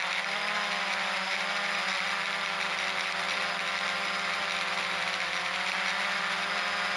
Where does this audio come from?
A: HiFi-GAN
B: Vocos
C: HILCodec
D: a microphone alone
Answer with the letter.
D